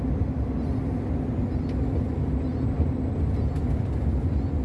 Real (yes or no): yes